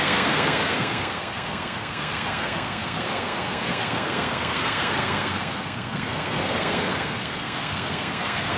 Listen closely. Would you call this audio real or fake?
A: fake